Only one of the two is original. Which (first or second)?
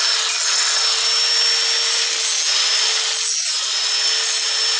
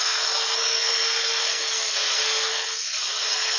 first